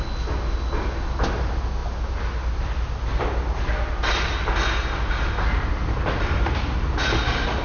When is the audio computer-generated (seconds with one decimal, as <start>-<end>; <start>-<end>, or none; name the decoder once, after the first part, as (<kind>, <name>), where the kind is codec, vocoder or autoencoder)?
none